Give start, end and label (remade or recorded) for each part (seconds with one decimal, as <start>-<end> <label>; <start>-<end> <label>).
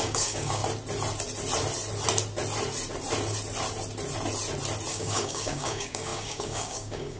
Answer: 0.0-0.6 remade; 0.6-4.9 recorded; 4.9-7.2 remade